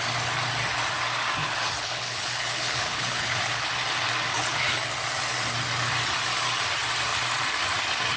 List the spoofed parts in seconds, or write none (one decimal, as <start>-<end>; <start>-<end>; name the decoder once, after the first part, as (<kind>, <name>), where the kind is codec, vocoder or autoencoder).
1.4-3.7 (codec, HILCodec); 4.4-4.9